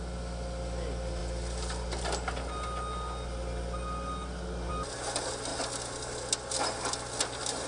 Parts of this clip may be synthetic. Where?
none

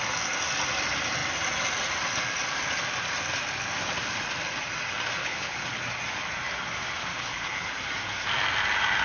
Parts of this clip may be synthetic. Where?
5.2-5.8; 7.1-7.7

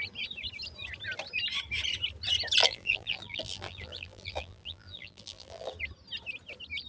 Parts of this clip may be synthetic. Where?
2.6-5.7

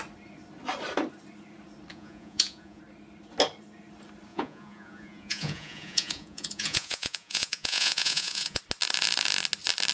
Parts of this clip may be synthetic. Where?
1.9-2.8; 4.3-8.6

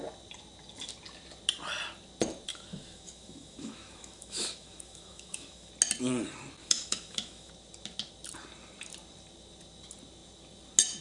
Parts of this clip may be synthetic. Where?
2.5-5.7; 6.6-7.5